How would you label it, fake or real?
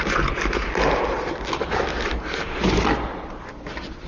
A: real